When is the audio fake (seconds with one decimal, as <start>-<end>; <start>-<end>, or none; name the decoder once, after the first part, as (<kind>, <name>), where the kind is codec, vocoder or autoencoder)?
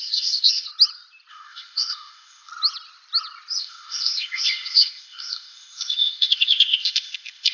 0.0-0.7 (codec, ZipCodec); 1.3-2.5; 3.6-7.5